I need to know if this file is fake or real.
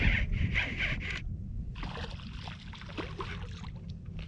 real